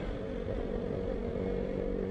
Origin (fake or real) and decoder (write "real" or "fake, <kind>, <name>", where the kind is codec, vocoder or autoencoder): real